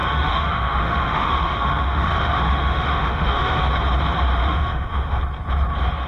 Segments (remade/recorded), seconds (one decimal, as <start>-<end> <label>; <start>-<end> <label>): 0.0-3.7 remade; 3.7-4.4 recorded; 4.4-5.2 remade; 5.2-6.1 recorded